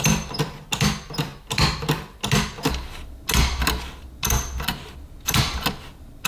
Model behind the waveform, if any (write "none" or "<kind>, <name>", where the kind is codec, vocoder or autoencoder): none